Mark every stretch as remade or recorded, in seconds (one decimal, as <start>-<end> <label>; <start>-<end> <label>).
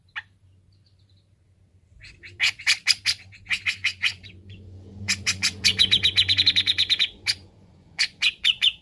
0.0-3.8 recorded; 3.8-8.8 remade